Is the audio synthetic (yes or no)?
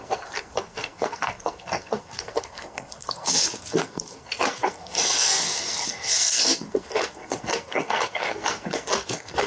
yes